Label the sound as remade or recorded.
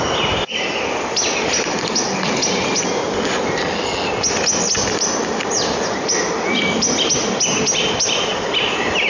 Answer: recorded